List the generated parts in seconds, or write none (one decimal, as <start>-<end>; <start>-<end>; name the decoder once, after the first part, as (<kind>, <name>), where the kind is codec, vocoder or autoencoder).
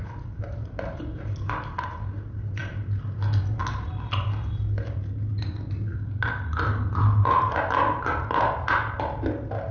none